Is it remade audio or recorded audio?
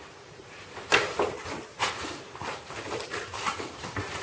remade